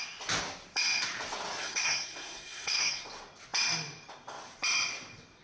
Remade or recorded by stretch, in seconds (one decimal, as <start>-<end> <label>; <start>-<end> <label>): 0.0-1.6 recorded; 1.6-3.0 remade; 3.0-5.4 recorded